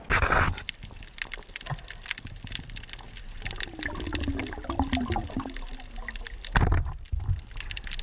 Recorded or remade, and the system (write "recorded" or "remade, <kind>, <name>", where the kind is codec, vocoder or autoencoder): recorded